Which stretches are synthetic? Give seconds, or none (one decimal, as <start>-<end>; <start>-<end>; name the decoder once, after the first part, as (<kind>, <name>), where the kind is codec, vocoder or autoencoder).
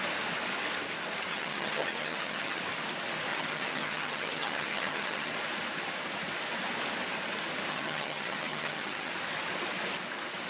1.3-2.6 (vocoder, HiFi-GAN); 3.3-5.3; 7.7-9.1